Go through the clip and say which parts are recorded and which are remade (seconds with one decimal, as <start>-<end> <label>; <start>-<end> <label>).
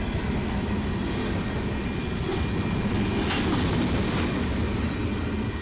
0.0-5.6 recorded